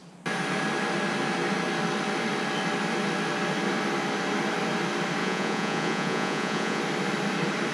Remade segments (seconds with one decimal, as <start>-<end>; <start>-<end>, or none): 5.2-6.8

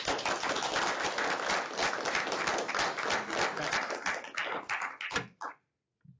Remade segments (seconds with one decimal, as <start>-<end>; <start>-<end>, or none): none

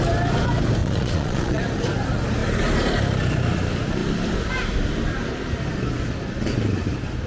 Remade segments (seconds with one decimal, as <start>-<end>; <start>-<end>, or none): 0.8-1.6

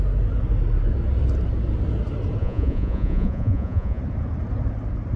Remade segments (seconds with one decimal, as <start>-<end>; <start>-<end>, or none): 2.4-4.0